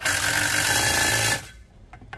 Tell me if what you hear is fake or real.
fake